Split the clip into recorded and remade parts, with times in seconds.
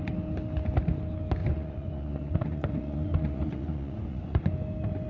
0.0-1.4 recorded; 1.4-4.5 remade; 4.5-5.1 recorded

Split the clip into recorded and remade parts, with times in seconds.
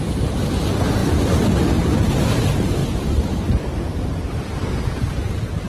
0.0-1.0 remade; 1.0-2.1 recorded; 2.1-5.7 remade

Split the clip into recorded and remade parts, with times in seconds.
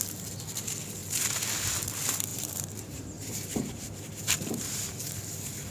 0.0-2.3 recorded; 2.3-5.7 remade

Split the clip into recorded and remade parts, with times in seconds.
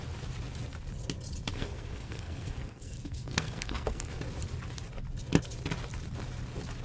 0.0-1.5 recorded; 1.5-4.2 remade; 4.2-6.8 recorded